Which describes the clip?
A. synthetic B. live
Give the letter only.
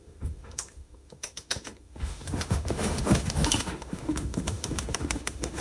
A